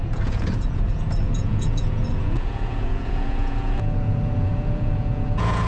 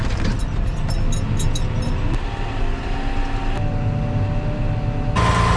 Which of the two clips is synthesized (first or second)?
first